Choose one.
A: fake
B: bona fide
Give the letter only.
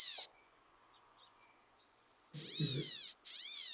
A